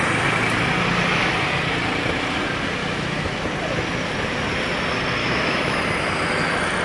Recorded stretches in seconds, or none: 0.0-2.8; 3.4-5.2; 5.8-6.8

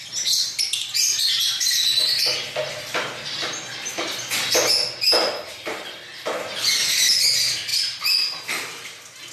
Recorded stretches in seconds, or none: 0.0-9.3

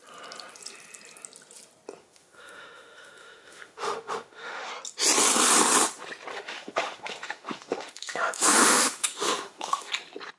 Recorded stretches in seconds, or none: 0.0-2.0; 4.7-6.3; 9.9-10.4

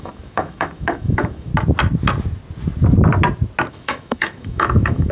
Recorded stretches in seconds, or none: 1.5-3.7

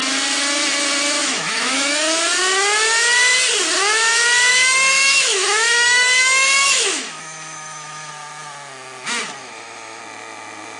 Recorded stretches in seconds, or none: 0.0-1.2; 2.2-4.5; 8.1-9.4; 10.0-10.8

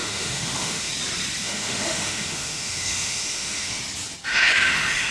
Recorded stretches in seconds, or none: 0.9-1.4; 3.8-4.3

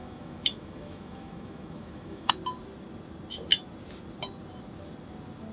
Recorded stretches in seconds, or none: 2.3-5.5